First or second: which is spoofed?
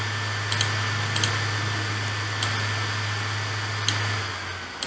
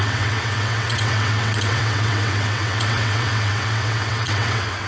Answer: second